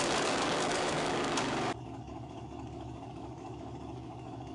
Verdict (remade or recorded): remade